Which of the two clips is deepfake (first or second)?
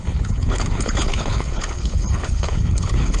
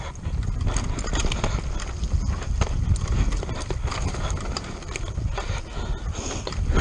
first